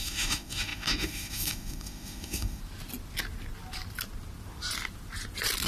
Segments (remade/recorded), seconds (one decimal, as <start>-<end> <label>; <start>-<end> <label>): 0.0-2.6 remade; 2.6-5.7 recorded